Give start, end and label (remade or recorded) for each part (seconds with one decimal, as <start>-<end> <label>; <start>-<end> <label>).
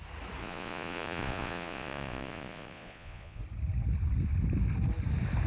0.0-0.4 recorded; 0.4-3.4 remade; 3.4-5.5 recorded